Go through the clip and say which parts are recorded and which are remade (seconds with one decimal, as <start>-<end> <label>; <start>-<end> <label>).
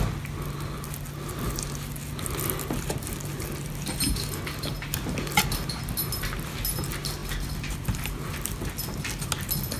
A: 0.0-9.8 recorded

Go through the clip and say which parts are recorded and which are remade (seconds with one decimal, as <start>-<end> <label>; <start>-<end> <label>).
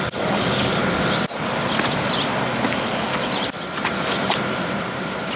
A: 0.0-0.8 remade; 0.8-2.7 recorded; 2.7-3.1 remade; 3.1-5.4 recorded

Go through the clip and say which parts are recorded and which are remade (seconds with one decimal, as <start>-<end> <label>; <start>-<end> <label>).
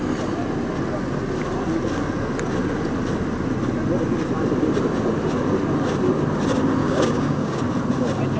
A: 0.0-6.8 recorded; 6.8-7.6 remade; 7.6-8.4 recorded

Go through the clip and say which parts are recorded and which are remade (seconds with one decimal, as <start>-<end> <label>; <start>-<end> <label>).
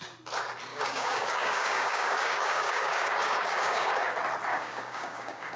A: 0.0-0.7 recorded; 0.7-4.1 remade; 4.1-4.5 recorded; 4.5-5.6 remade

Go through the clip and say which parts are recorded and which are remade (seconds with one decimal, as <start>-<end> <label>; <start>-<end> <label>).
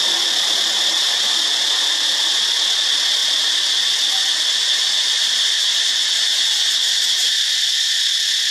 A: 0.0-8.5 recorded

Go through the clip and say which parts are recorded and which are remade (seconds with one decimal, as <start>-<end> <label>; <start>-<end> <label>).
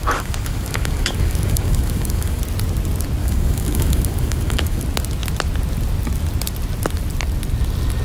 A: 0.0-2.4 remade; 2.4-3.2 recorded; 3.2-4.8 remade; 4.8-8.0 recorded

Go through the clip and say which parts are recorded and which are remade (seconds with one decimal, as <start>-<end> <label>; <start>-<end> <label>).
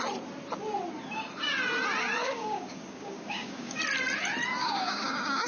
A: 0.0-2.2 recorded; 2.2-3.8 remade; 3.8-4.6 recorded; 4.6-5.5 remade